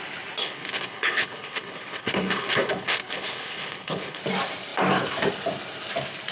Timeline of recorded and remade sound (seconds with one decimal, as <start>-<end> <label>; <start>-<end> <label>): 0.0-0.4 recorded; 0.4-4.2 remade; 4.2-6.3 recorded